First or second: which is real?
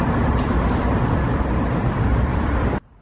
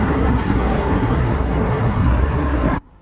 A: first